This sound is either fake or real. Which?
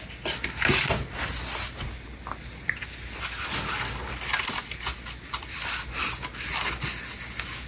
real